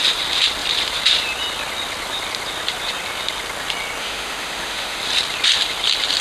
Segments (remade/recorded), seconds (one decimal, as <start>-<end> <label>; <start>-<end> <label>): 0.0-4.0 recorded; 4.0-5.0 remade; 5.0-6.2 recorded